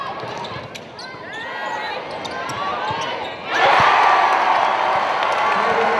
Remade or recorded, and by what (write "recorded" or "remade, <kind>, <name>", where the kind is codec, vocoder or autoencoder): recorded